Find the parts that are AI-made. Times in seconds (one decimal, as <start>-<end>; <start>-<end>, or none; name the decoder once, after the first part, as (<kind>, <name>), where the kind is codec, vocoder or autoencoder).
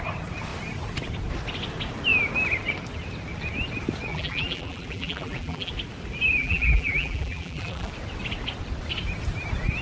4.1-5.7 (vocoder, BigVGAN v2); 6.4-7.9